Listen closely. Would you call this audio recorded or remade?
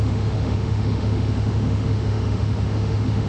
remade